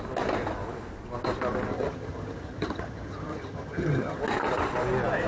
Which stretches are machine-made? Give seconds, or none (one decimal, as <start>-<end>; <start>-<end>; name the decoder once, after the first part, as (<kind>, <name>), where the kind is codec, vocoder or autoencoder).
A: 1.7-4.2 (vocoder, HiFi-GAN)

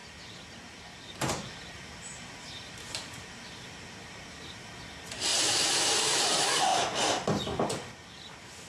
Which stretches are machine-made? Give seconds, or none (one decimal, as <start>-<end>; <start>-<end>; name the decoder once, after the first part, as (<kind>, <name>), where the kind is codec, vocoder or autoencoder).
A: 0.0-4.7 (vocoder, BigVGAN v2); 5.3-6.0